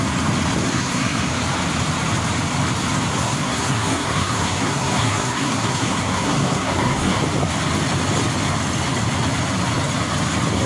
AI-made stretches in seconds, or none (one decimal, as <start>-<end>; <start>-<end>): 0.7-1.3; 3.1-7.2